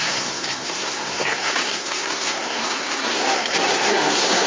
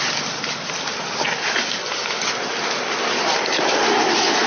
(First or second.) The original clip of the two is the second